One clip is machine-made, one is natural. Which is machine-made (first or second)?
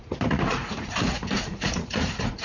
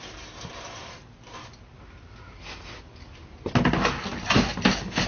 first